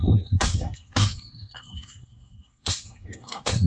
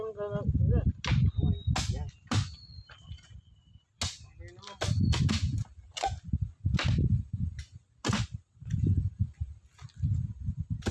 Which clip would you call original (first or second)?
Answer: second